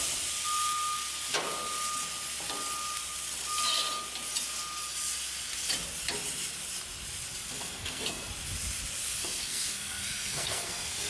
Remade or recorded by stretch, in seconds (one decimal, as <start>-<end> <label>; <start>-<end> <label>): 0.0-7.6 recorded; 7.6-8.3 remade; 8.3-9.2 recorded; 9.2-11.1 remade